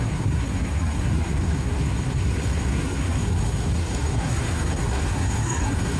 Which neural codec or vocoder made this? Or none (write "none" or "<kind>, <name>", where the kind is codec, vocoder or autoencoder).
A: codec, SNAC